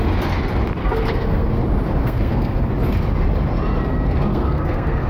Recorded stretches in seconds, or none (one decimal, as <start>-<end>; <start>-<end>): 0.0-0.8; 1.6-2.0; 2.7-4.3